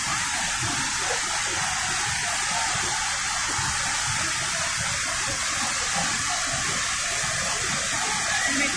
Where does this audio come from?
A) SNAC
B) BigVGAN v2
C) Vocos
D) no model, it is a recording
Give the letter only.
D